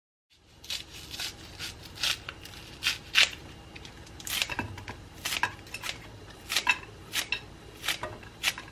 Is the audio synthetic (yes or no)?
no